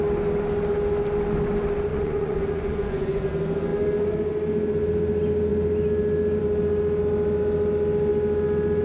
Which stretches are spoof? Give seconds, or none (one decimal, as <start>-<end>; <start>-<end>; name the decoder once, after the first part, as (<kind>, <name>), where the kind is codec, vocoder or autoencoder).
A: 1.9-3.3 (vocoder, Vocos)